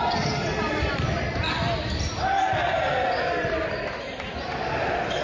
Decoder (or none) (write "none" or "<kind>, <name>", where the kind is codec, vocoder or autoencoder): none